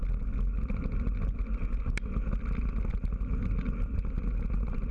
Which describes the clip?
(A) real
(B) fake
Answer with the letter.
A